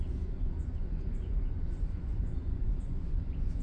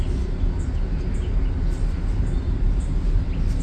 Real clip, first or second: second